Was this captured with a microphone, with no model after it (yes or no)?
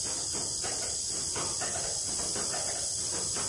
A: yes